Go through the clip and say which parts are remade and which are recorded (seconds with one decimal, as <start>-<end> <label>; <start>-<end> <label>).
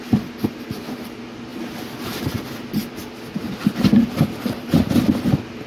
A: 0.0-5.7 recorded